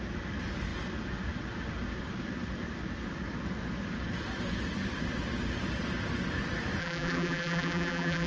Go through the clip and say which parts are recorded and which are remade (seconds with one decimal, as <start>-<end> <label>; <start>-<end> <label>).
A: 0.0-6.8 recorded; 6.8-8.3 remade